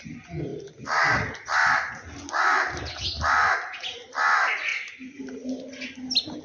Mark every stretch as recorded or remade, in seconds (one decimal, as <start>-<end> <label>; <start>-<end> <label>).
0.0-6.4 recorded